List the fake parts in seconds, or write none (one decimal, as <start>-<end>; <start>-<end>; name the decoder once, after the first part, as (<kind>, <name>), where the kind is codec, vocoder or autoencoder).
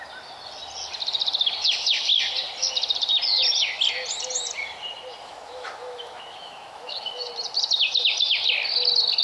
5.2-7.3 (autoencoder, DAC-VAE)